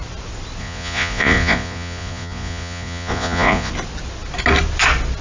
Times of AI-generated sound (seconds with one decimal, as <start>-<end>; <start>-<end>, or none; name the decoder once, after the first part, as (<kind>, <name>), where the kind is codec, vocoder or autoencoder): 0.6-3.7 (vocoder, Vocos)